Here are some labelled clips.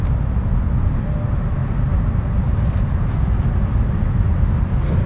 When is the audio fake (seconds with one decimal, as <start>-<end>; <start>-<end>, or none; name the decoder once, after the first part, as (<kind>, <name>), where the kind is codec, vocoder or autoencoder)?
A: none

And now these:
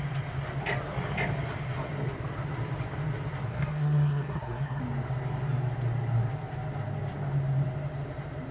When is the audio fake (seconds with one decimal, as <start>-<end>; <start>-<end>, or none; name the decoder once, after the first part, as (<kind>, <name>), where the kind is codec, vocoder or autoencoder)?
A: 3.5-4.8 (codec, SNAC)

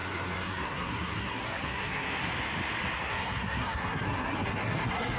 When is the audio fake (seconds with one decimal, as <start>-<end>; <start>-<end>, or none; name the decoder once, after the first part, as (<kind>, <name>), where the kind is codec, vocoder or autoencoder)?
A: 0.0-2.2 (codec, SNAC); 2.9-5.2

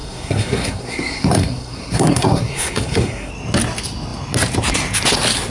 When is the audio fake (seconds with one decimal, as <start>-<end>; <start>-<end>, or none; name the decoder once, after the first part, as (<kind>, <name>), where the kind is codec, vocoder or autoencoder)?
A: 0.0-3.3 (codec, SNAC)

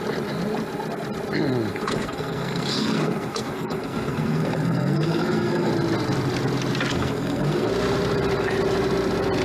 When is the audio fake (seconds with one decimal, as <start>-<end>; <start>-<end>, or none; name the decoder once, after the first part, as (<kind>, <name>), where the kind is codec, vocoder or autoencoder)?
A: 1.7-5.7 (codec, SNAC); 6.9-7.7

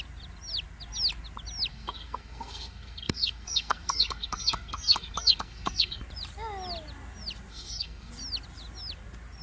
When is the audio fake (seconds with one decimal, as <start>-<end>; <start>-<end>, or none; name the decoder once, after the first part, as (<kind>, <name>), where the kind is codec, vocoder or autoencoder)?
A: 1.7-6.0 (codec, SNAC); 7.5-8.1